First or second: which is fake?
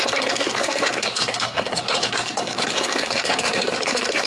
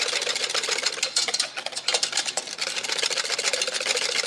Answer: first